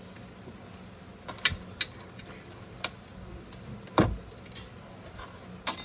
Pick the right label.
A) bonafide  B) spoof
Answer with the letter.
A